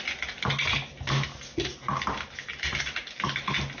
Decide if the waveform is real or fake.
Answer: real